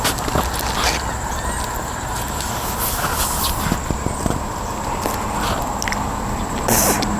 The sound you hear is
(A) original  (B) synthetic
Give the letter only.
A